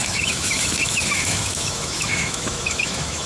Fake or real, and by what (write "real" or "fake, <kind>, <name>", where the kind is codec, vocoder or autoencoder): fake, autoencoder, DAC-VAE